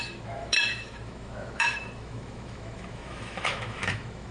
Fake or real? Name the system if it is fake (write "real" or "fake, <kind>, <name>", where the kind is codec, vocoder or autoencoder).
fake, autoencoder, DAC-VAE